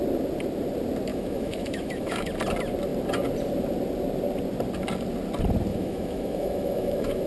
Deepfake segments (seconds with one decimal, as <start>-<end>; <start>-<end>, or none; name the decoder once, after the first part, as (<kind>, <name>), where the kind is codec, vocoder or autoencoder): 1.1-2.3 (autoencoder, DAC-VAE); 5.7-7.3